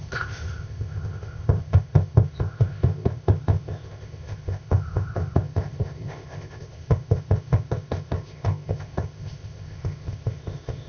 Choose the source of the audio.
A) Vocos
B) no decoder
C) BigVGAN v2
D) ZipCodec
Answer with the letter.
D